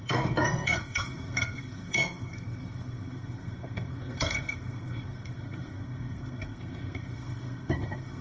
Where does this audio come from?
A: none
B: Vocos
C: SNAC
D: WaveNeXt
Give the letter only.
C